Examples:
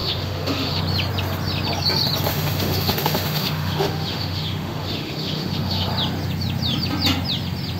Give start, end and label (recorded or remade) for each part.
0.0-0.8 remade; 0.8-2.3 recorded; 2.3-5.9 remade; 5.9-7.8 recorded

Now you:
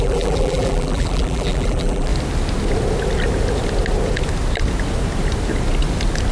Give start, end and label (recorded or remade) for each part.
0.0-2.1 remade; 2.1-6.3 recorded